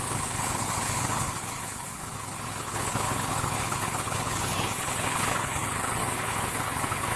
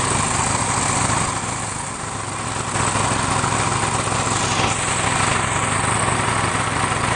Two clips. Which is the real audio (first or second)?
second